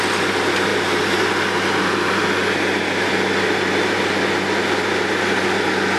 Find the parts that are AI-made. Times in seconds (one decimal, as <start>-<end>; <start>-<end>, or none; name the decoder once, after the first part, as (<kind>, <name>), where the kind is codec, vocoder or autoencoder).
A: none